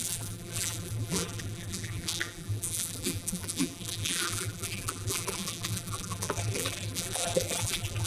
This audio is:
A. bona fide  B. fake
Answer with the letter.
B